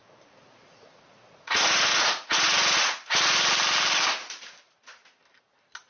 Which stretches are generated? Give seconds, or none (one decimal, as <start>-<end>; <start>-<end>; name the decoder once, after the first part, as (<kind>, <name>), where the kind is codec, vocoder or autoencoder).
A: 0.0-3.5 (vocoder, Vocos)